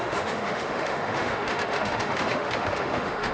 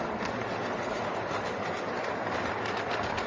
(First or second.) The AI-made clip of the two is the first